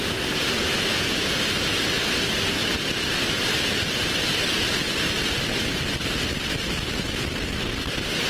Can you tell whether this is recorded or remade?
recorded